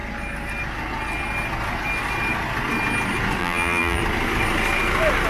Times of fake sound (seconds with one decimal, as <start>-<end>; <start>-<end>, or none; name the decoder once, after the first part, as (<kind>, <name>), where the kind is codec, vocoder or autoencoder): 3.4-4.0 (vocoder, BigVGAN v2)